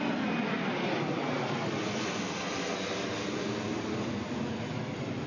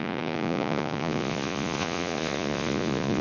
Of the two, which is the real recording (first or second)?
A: first